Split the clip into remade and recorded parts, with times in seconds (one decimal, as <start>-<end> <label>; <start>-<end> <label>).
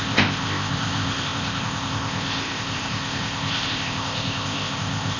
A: 0.0-5.2 remade